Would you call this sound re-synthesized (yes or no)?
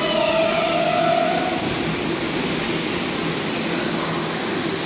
no